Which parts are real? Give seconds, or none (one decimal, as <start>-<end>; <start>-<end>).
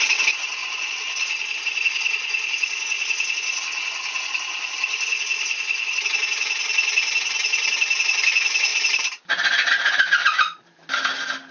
0.0-0.6; 1.6-8.7; 9.2-11.5